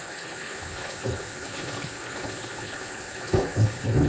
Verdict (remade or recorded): remade